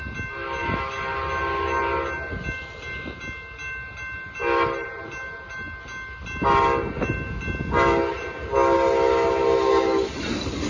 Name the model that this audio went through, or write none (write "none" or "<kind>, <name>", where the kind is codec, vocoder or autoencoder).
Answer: none